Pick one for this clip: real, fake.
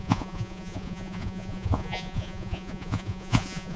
fake